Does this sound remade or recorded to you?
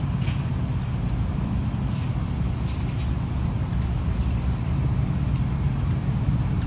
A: recorded